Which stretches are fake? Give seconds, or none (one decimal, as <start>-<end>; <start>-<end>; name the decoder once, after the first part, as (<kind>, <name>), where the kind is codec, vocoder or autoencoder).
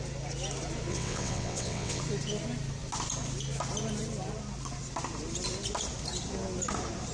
0.9-2.0 (vocoder, WaveNeXt)